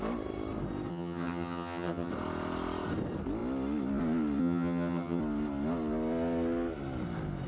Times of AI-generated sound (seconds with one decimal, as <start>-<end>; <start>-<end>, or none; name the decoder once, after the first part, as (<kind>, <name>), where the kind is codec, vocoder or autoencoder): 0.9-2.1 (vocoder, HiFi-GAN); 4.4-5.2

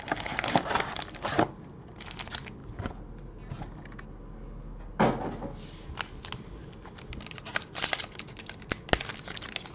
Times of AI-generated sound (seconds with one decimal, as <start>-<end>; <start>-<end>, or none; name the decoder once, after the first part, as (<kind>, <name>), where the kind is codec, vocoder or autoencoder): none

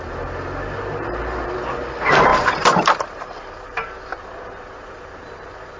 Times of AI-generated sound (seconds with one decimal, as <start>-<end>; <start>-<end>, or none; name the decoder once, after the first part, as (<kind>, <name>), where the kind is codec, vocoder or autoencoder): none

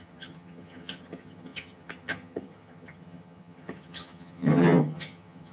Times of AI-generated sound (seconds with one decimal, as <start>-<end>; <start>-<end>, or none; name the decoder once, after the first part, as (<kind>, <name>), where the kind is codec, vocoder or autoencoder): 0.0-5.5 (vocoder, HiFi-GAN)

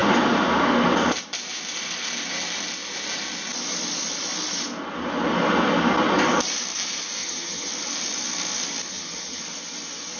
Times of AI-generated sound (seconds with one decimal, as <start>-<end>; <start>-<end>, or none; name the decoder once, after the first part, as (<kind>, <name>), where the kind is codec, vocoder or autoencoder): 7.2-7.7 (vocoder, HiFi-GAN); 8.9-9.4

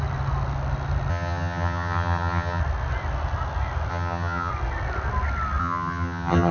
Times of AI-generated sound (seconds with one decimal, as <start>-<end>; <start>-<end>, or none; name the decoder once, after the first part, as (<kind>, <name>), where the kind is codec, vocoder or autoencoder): 1.1-2.6 (vocoder, HiFi-GAN); 3.9-4.5; 5.6-6.5